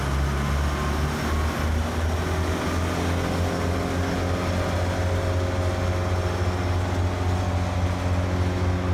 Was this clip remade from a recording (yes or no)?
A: no